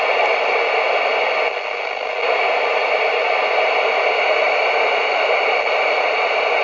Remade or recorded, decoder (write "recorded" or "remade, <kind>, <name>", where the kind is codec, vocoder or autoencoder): recorded